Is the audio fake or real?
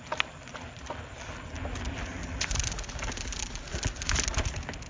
real